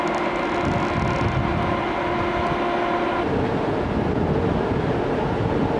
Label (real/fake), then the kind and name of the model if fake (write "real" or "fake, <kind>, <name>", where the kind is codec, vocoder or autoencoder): real